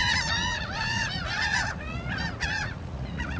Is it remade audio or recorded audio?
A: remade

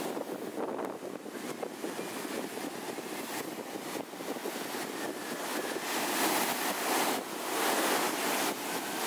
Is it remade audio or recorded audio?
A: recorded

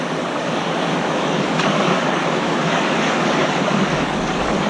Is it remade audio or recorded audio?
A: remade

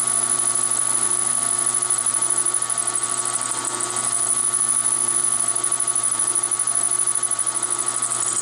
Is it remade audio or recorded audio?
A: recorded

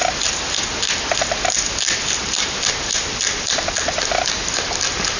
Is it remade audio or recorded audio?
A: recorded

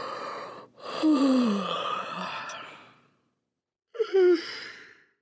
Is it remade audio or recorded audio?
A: remade